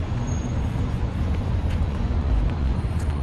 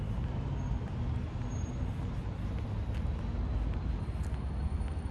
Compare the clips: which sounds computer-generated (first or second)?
first